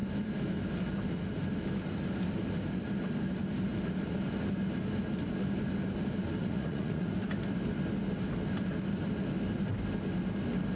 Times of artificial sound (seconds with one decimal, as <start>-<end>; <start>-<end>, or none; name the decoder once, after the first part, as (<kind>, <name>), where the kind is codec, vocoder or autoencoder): 6.4-7.1 (vocoder, Vocos)